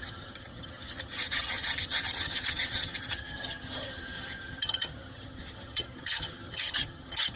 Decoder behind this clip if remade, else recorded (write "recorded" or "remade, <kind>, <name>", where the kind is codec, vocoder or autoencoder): remade, vocoder, HiFi-GAN